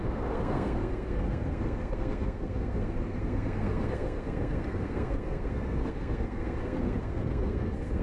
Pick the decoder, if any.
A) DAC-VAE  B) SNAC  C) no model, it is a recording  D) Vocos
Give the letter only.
B